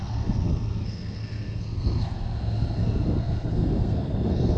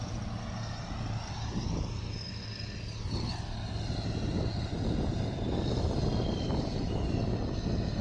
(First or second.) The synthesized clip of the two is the first